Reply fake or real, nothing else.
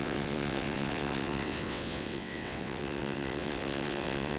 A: fake